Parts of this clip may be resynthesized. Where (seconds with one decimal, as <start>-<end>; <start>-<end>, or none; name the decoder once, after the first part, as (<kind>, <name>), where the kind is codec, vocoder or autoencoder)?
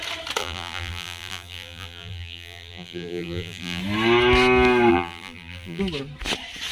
0.4-3.8 (vocoder, BigVGAN v2); 4.9-5.8